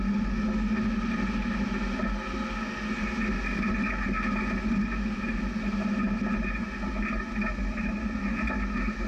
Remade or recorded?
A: recorded